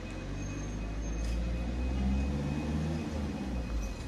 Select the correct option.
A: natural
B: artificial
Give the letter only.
A